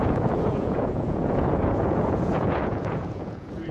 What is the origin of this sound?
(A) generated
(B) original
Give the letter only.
A